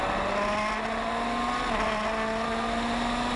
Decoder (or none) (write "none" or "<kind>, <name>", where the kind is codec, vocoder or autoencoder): none